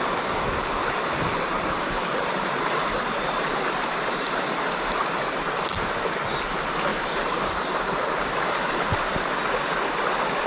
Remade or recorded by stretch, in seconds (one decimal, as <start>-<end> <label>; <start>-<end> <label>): 0.0-0.8 recorded; 0.8-5.2 remade; 5.2-6.9 recorded; 6.9-9.3 remade; 9.3-10.5 recorded